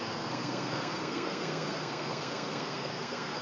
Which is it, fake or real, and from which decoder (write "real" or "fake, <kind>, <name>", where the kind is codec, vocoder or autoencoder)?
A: fake, codec, SNAC